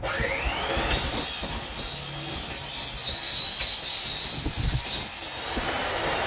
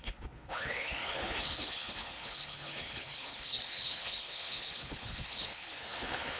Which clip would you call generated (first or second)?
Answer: second